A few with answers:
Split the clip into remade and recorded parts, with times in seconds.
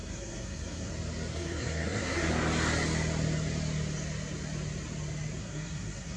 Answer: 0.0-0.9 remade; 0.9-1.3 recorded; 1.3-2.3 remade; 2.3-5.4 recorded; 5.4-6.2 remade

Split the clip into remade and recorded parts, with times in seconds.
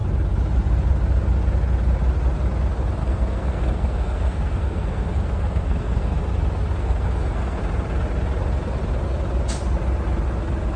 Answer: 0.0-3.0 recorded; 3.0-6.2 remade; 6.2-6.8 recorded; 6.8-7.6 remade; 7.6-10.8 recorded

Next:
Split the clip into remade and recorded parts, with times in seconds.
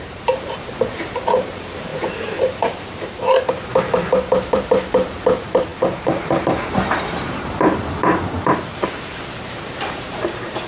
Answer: 0.0-10.7 remade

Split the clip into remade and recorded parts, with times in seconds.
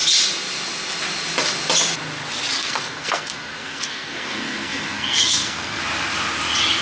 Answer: 0.0-2.6 recorded; 2.6-5.8 remade; 5.8-6.8 recorded